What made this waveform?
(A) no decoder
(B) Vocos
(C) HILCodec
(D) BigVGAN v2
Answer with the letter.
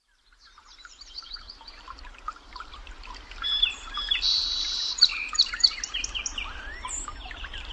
D